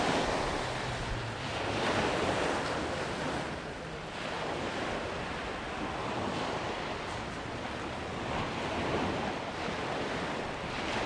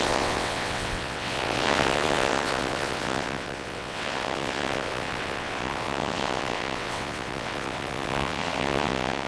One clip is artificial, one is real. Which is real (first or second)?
first